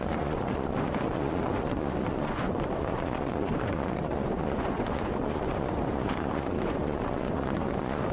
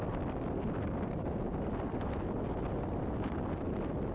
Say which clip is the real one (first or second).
second